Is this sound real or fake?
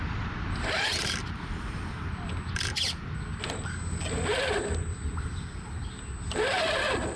real